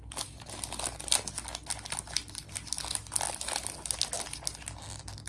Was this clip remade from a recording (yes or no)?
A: no